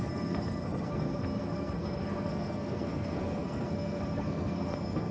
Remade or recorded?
remade